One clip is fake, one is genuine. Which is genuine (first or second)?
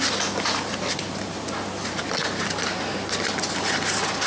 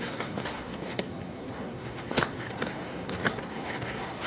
first